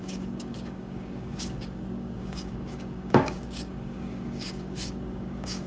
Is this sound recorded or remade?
remade